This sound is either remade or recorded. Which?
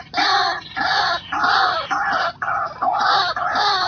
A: recorded